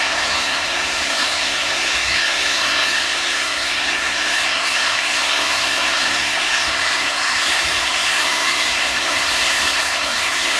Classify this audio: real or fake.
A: fake